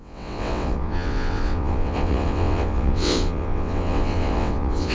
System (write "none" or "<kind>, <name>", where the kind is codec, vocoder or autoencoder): vocoder, WaveNeXt